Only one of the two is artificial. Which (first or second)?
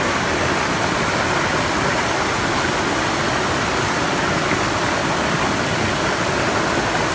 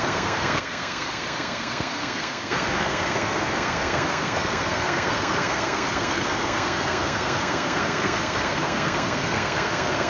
second